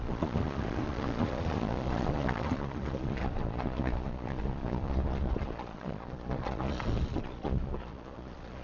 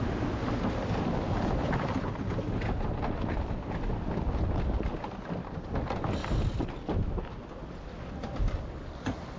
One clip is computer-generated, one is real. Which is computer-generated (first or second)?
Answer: first